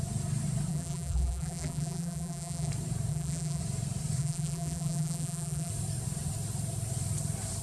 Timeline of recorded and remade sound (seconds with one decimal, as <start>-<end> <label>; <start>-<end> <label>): 0.0-0.7 recorded; 0.7-2.7 remade; 2.7-3.1 recorded; 3.1-3.6 remade; 3.6-4.2 recorded; 4.2-5.7 remade; 5.7-7.6 recorded